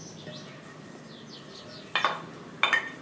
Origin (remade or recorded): recorded